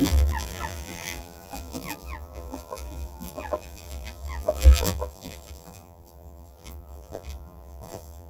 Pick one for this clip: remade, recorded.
remade